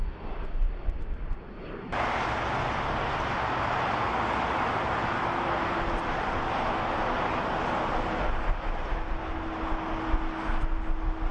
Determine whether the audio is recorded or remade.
recorded